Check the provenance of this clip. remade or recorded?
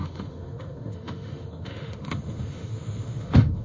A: remade